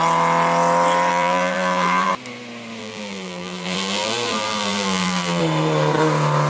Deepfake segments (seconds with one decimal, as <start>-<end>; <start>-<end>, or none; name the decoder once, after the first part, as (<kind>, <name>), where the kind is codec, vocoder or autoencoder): 1.1-2.1 (vocoder, BigVGAN v2); 2.8-5.4